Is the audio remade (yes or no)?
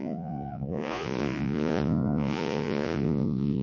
yes